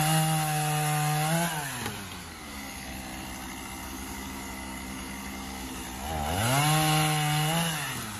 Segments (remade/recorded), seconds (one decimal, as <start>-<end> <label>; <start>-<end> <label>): 0.0-2.2 recorded; 2.2-3.0 remade; 3.0-3.8 recorded; 3.8-5.7 remade; 5.7-8.2 recorded